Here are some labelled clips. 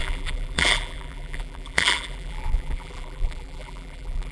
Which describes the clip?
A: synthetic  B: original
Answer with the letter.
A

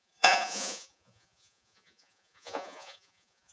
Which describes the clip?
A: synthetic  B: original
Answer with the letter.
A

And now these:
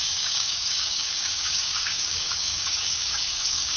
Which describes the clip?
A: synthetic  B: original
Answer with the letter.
A